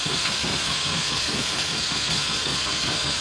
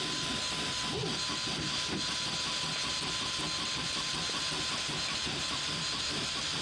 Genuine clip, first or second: second